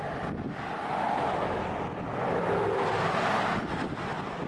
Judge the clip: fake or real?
real